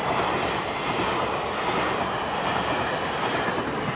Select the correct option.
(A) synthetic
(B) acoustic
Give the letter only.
B